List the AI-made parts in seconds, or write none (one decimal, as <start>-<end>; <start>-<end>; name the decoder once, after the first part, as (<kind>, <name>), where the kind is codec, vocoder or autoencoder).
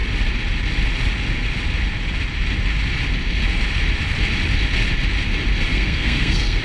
5.7-6.6 (codec, SNAC)